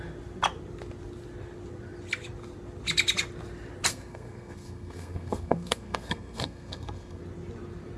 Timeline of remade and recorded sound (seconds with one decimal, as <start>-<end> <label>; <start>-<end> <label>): 0.0-3.9 recorded; 3.9-7.2 remade; 7.2-8.0 recorded